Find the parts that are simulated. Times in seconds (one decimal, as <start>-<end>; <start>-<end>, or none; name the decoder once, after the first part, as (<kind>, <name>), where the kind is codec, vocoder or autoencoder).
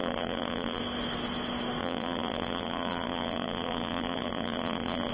0.0-0.8 (vocoder, BigVGAN v2); 1.8-5.1